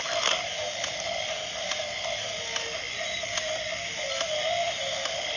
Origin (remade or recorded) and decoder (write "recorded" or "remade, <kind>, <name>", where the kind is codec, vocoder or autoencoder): recorded